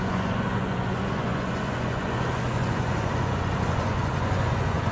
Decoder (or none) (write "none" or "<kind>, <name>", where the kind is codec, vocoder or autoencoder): vocoder, Vocos